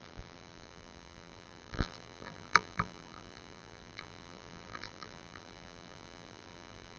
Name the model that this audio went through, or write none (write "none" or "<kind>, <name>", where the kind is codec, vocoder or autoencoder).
vocoder, BigVGAN v2